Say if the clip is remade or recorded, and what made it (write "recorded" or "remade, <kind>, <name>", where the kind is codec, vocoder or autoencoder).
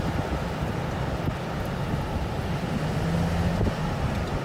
recorded